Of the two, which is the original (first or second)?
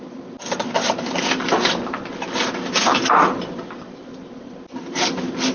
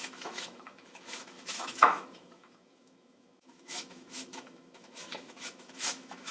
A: first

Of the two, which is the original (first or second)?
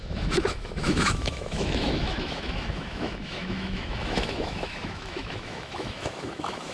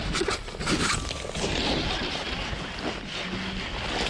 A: second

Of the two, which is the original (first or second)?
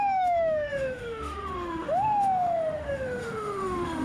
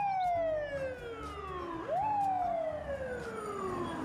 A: second